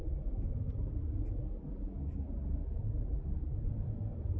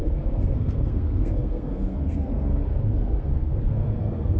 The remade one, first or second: second